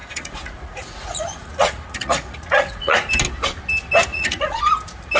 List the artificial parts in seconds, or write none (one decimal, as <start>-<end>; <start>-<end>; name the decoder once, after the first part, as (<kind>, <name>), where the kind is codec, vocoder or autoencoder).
0.0-3.1 (vocoder, Vocos); 4.1-4.6

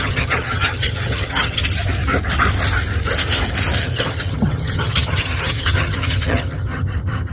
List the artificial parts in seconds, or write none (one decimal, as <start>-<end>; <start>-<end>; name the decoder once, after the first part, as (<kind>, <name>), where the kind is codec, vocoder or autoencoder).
0.0-1.6 (vocoder, HiFi-GAN); 3.8-7.3

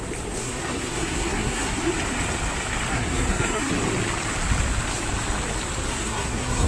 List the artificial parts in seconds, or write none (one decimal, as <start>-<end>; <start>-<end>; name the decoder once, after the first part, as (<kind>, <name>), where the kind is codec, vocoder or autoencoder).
0.4-1.9 (codec, SNAC); 2.9-3.7; 5.9-6.7

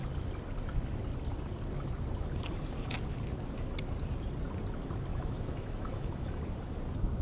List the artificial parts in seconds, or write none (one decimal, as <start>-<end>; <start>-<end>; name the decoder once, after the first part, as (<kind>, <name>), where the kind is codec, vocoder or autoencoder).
5.1-6.4 (autoencoder, DAC-VAE)

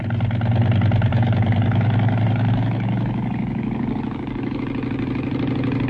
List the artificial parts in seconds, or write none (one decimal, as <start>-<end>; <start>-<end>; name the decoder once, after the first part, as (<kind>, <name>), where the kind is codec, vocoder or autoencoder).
1.1-4.6 (codec, DAC)

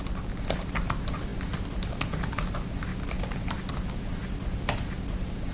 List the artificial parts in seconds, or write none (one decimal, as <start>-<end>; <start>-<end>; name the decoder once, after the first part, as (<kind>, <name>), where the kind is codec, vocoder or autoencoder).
none

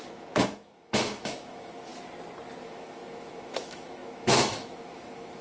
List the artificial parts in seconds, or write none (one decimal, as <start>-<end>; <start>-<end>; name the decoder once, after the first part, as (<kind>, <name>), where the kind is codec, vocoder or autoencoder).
0.0-1.9 (autoencoder, DAC-VAE); 2.6-5.4